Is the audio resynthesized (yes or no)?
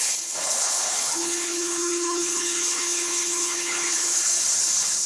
yes